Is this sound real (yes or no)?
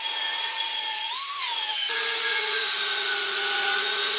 no